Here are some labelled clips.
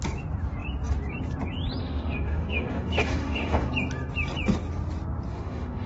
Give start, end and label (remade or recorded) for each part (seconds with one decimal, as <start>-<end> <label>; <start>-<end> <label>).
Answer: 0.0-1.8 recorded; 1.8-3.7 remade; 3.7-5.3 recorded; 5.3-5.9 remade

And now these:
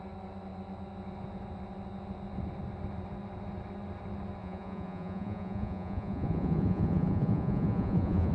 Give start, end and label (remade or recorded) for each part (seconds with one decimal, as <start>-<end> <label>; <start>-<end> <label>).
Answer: 0.0-4.4 recorded; 4.4-8.3 remade

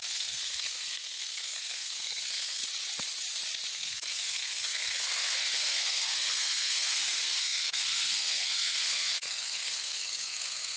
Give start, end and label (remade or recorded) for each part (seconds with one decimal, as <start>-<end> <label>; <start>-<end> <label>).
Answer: 0.0-2.6 remade; 2.6-3.7 recorded; 3.7-10.8 remade